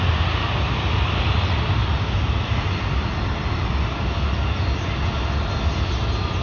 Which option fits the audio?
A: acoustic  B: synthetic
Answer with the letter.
A